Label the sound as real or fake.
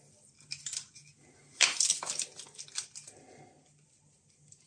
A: real